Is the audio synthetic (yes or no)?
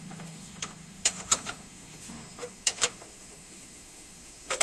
yes